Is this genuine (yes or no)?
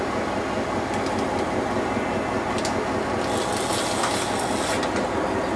yes